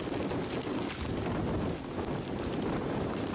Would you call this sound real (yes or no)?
yes